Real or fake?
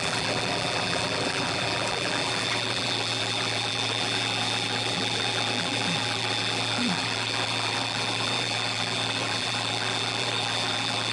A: fake